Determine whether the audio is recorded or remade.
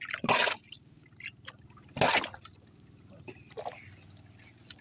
recorded